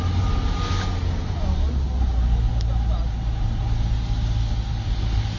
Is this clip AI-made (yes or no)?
no